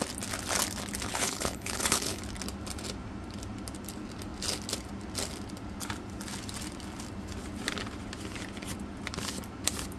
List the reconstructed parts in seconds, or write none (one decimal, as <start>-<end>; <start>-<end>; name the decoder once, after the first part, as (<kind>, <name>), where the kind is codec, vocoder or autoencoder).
1.1-2.2 (codec, HILCodec)